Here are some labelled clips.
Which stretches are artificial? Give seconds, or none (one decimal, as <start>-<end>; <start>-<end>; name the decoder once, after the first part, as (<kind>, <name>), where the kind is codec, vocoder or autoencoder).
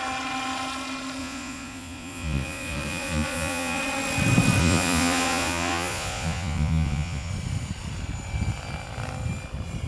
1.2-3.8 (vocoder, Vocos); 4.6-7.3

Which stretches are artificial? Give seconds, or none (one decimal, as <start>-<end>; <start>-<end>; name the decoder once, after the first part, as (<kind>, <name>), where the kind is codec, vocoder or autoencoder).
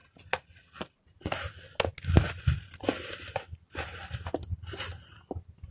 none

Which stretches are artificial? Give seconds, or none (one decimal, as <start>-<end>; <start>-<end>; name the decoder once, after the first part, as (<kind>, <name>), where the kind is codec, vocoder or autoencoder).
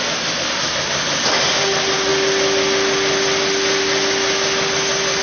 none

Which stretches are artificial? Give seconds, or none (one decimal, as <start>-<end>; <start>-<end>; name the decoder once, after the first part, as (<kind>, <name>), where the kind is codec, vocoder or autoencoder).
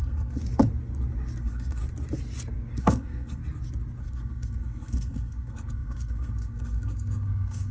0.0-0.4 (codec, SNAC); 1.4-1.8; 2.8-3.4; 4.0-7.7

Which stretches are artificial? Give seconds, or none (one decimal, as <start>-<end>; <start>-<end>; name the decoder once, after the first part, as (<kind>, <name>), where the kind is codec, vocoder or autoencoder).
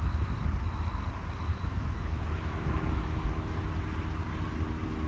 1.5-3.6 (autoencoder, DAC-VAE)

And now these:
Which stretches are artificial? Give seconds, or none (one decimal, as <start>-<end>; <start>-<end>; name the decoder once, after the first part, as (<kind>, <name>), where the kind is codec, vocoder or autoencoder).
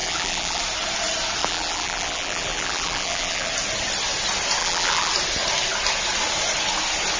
0.0-0.6 (vocoder, BigVGAN v2); 1.4-3.5; 4.6-5.1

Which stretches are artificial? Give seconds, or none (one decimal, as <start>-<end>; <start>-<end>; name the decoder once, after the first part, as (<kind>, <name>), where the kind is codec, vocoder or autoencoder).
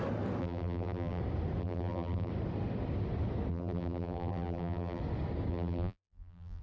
0.4-1.2 (vocoder, BigVGAN v2); 1.6-2.3; 3.5-5.0; 5.5-6.6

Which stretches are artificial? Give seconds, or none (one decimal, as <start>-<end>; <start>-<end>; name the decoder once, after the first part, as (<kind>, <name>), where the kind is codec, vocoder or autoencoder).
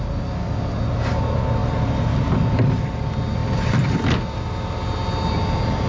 none